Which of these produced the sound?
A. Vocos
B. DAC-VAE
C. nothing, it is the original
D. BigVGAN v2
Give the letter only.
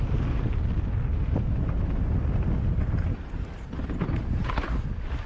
C